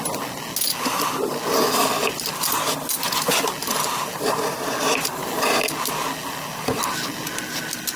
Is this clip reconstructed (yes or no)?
no